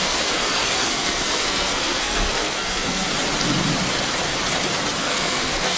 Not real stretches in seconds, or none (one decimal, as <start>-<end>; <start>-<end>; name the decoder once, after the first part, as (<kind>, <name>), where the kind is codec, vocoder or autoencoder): 0.0-3.1 (codec, SNAC); 5.0-5.8